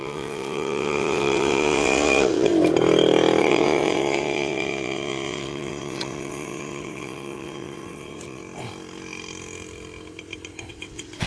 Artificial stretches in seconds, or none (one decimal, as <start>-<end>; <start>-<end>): 0.0-2.5; 3.4-8.4; 10.7-11.3